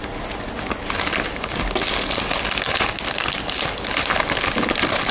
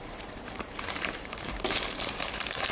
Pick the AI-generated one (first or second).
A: second